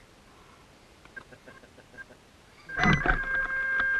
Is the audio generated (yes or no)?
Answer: no